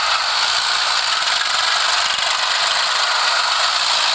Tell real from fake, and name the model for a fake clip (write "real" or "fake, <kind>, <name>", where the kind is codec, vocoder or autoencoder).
real